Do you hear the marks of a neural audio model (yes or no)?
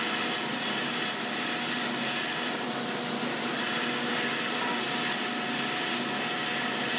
no